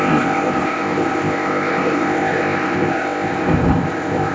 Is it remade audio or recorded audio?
remade